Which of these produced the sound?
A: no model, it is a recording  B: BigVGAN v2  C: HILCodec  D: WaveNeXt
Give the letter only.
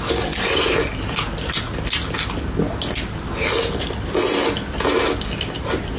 A